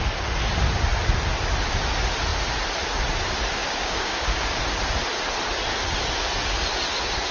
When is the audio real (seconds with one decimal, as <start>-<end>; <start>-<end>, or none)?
0.0-3.6; 4.6-7.3